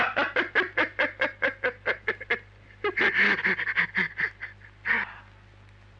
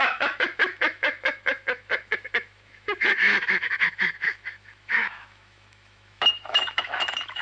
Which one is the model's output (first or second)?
second